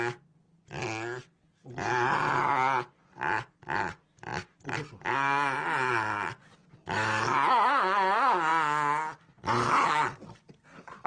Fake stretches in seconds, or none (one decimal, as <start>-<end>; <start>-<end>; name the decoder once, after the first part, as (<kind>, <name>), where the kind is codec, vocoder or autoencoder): none